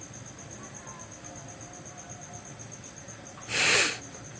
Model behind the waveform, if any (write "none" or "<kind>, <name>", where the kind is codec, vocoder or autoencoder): none